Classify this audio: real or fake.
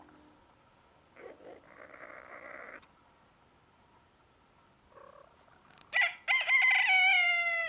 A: real